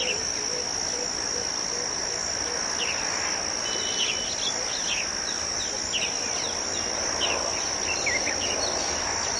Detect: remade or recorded recorded